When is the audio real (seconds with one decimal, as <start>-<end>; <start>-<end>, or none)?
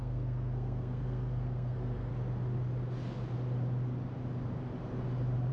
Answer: 2.1-5.5